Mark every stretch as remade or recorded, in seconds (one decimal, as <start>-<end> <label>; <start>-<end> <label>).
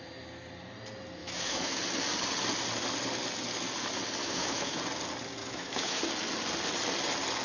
0.0-1.2 recorded; 1.2-1.8 remade; 1.8-4.2 recorded; 4.2-4.8 remade; 4.8-5.4 recorded; 5.4-6.0 remade; 6.0-7.4 recorded